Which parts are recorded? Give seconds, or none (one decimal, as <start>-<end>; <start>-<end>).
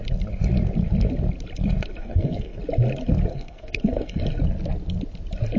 0.0-2.0; 2.6-3.3; 4.2-5.6